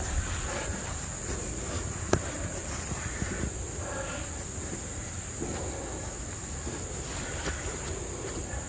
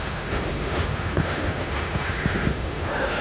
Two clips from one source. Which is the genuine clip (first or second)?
first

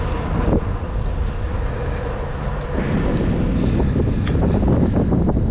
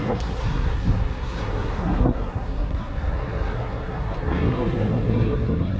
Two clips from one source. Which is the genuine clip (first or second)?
first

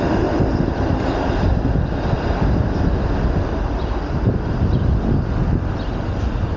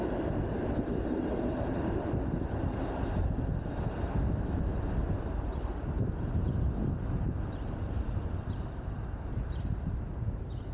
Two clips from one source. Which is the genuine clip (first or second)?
first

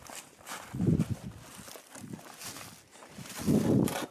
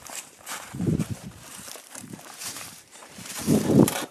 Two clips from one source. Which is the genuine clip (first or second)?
first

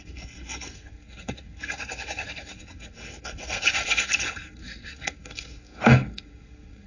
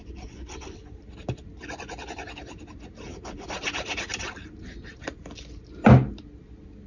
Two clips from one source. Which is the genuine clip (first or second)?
second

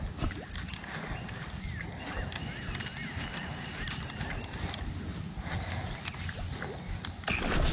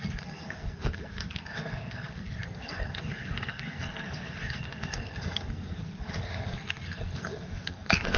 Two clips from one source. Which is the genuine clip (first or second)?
first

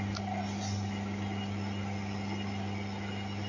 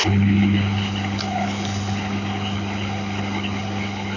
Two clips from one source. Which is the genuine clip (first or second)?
first